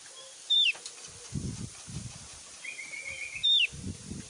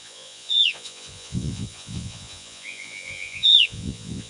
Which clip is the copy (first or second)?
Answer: second